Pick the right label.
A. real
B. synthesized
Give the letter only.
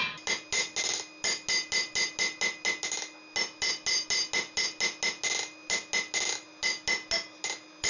A